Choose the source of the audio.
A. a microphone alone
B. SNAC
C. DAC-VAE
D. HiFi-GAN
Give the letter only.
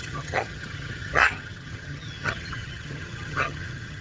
D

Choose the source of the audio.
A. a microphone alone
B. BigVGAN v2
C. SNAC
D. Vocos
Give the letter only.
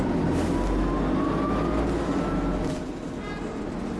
A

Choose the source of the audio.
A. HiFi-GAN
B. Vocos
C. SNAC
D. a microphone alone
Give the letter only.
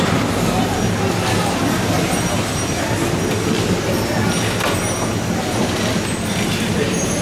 D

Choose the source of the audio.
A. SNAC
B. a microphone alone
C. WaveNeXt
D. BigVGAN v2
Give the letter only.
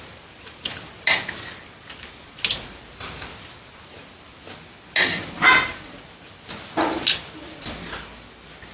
B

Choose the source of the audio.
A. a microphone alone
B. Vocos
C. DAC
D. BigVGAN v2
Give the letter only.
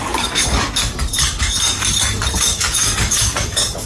C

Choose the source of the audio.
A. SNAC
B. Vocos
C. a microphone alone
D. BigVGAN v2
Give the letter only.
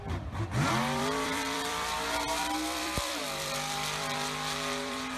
D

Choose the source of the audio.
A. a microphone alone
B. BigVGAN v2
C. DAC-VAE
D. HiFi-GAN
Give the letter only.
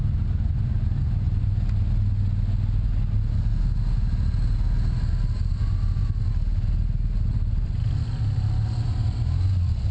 A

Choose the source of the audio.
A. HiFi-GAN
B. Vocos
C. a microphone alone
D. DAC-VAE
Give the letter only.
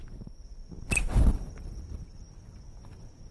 C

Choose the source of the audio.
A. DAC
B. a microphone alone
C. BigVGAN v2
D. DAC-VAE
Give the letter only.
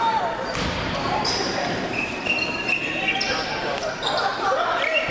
C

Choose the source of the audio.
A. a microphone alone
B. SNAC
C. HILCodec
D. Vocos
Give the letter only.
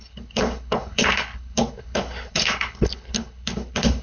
C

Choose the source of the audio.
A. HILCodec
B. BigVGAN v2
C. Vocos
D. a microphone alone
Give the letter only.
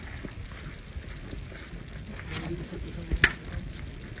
D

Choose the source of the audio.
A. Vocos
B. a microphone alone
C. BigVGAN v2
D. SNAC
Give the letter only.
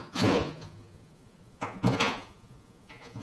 A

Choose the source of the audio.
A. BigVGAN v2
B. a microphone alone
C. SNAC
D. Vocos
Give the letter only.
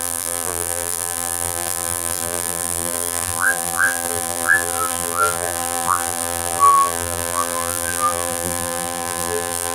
A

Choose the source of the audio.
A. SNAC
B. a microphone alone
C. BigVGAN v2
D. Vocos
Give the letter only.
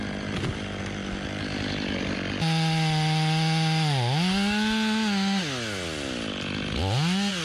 B